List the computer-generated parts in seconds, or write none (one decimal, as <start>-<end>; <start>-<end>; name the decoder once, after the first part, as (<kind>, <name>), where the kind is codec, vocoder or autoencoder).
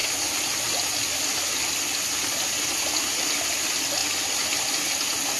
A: none